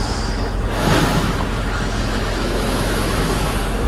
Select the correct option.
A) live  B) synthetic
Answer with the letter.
B